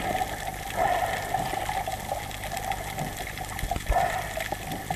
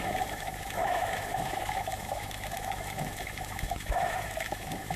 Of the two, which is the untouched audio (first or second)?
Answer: first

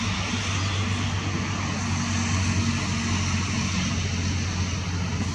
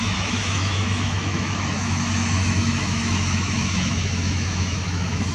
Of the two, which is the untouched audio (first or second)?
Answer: first